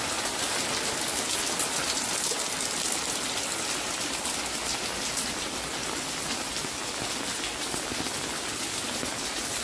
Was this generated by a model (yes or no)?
no